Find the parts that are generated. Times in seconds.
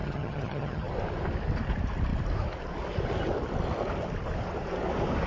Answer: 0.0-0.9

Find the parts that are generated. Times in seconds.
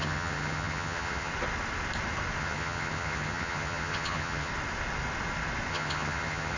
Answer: 0.0-1.3; 2.4-4.5; 5.7-6.6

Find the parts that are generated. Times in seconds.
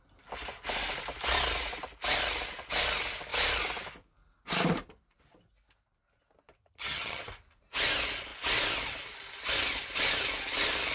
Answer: 6.6-7.2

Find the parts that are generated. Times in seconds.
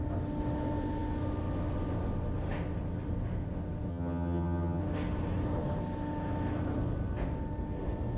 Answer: 3.9-4.8